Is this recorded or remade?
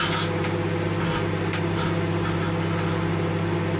recorded